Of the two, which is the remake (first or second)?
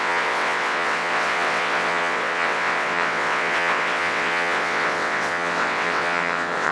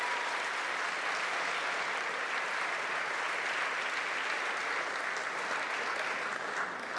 first